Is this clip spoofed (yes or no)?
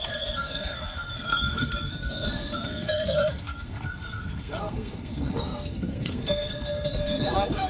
yes